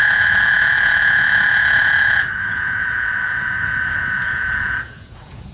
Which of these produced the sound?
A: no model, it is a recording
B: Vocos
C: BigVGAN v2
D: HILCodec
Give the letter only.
B